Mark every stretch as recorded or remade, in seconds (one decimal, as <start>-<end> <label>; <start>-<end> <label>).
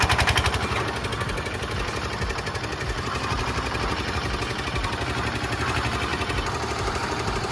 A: 0.0-6.1 recorded; 6.1-7.5 remade